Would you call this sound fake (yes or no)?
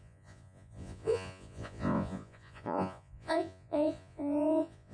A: yes